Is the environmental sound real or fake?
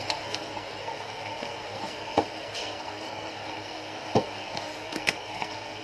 fake